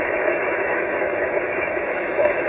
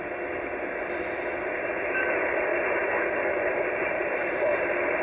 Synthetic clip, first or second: first